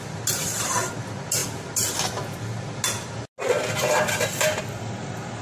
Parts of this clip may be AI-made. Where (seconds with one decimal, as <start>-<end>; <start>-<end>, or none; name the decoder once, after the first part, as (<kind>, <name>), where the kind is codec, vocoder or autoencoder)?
none